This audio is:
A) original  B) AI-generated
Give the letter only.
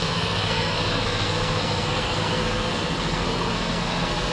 B